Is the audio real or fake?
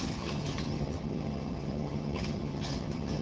fake